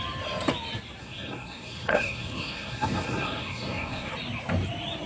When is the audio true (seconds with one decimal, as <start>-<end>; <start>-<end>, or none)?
0.0-1.0; 4.1-5.1